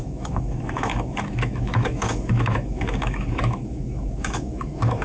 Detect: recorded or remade remade